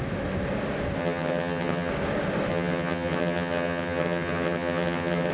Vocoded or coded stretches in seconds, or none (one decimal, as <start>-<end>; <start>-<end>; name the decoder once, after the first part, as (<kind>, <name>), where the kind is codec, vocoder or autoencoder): 1.0-1.9 (vocoder, HiFi-GAN); 2.5-5.3